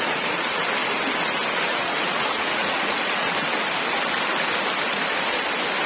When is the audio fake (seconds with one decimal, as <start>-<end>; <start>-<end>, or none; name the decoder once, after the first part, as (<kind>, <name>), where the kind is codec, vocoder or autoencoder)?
0.0-0.6 (vocoder, Vocos); 1.7-3.3